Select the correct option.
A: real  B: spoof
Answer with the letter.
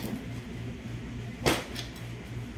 A